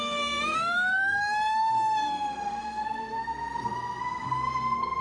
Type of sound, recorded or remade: remade